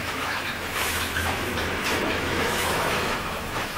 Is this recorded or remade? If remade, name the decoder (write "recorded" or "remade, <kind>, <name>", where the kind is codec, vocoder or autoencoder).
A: remade, autoencoder, DAC-VAE